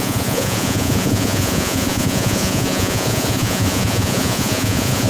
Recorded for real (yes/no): no